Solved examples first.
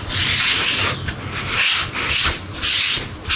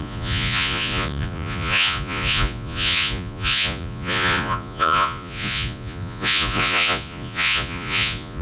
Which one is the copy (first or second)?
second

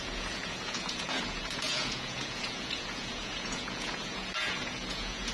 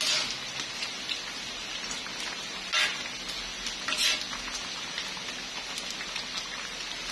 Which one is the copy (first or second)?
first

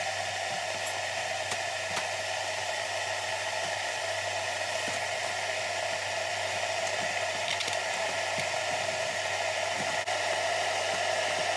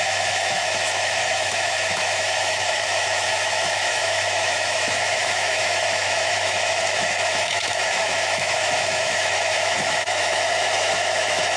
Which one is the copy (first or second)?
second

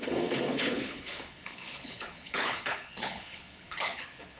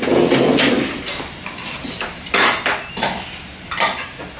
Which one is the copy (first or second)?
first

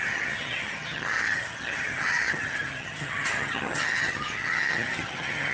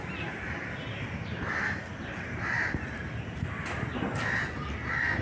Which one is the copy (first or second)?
first